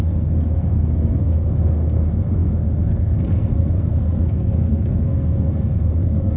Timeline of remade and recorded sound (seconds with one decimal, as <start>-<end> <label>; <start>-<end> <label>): 0.0-6.4 remade